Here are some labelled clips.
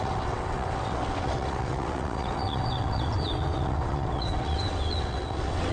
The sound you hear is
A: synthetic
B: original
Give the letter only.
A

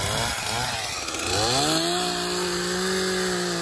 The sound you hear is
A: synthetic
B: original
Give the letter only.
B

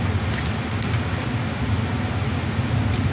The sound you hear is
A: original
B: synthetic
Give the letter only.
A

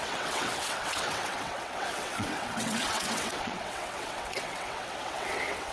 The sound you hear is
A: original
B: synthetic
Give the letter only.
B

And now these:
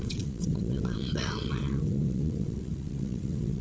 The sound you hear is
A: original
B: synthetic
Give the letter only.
B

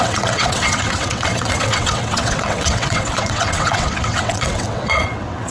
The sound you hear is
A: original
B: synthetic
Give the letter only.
B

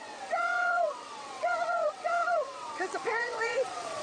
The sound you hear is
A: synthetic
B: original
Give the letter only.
A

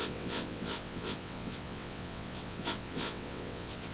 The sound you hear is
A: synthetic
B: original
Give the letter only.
A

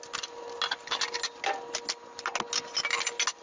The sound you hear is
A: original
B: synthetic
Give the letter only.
A